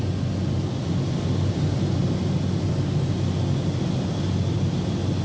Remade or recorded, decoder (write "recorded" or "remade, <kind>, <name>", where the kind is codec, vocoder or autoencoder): recorded